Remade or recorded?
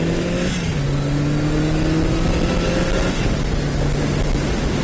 recorded